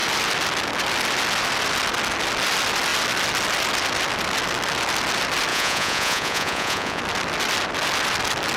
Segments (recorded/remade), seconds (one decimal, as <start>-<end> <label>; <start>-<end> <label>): 0.0-5.5 recorded; 5.5-7.0 remade; 7.0-8.6 recorded